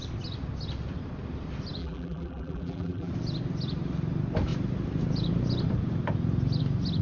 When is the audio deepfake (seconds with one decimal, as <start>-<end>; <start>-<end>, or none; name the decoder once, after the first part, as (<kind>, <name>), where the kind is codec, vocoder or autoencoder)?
1.8-3.1 (vocoder, BigVGAN v2)